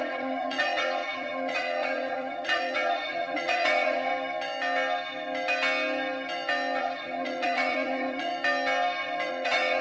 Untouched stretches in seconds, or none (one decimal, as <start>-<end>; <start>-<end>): 4.1-6.8; 8.3-9.3

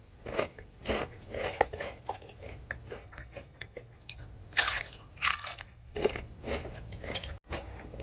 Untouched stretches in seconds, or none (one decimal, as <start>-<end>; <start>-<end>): 0.0-3.0; 4.2-5.3; 6.1-8.0